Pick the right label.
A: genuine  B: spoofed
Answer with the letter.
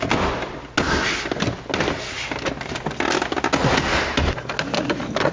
A